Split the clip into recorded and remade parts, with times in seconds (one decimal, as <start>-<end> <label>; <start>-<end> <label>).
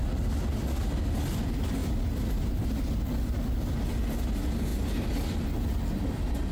0.0-6.5 recorded